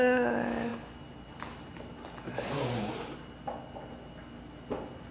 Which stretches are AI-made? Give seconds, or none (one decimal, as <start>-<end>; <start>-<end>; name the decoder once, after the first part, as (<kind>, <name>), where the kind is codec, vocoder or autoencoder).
none